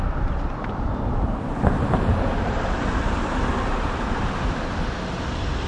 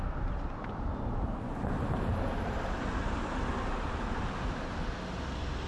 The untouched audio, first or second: second